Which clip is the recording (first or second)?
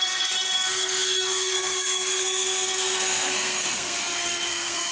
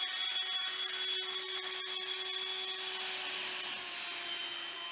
second